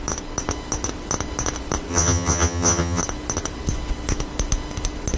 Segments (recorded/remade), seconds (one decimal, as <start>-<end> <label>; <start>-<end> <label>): 0.0-1.9 recorded; 1.9-3.0 remade; 3.0-5.2 recorded